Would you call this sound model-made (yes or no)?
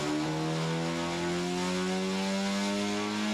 no